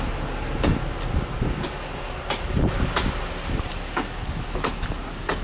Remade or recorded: recorded